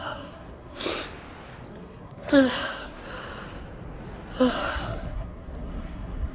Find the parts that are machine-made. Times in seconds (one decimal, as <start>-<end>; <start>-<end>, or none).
0.0-0.9; 1.7-3.0; 4.5-6.3